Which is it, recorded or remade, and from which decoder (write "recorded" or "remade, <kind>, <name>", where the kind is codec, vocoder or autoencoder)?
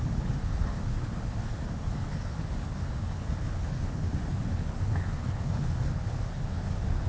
remade, codec, HILCodec